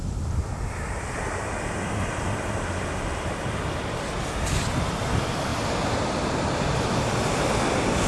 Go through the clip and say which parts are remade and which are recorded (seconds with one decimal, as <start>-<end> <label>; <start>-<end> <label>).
0.0-8.1 recorded